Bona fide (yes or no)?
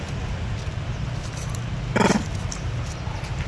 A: yes